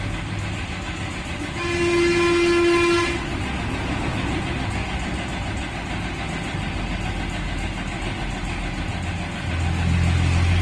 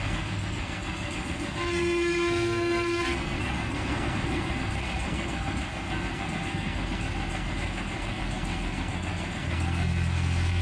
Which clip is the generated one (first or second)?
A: second